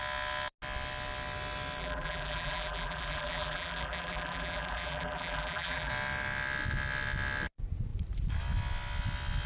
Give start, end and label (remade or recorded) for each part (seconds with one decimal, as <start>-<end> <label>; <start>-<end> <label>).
0.0-1.8 recorded; 1.8-5.9 remade; 5.9-9.5 recorded